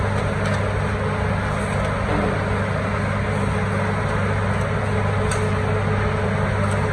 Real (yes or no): yes